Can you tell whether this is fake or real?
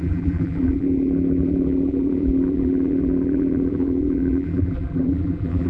fake